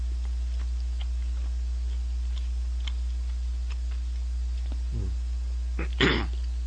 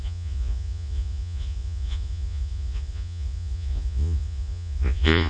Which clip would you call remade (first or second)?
second